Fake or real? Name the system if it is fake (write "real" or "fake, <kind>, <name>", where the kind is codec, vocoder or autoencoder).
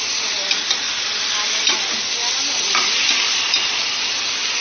real